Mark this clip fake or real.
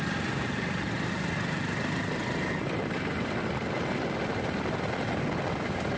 real